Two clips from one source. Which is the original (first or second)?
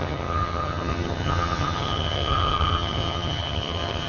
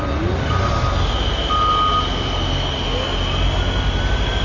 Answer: second